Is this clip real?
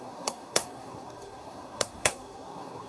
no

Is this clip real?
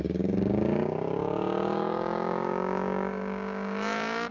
no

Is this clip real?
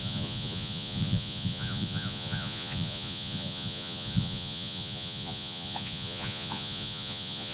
no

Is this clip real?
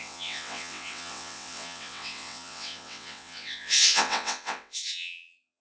no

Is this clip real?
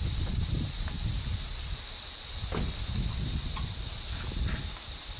yes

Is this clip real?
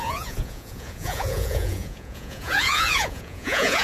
no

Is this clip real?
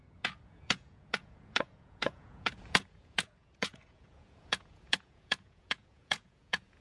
no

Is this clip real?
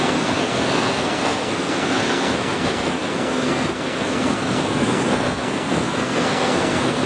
no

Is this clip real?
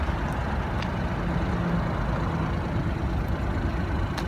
yes